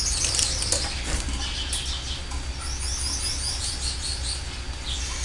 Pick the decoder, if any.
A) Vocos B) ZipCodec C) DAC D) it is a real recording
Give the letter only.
D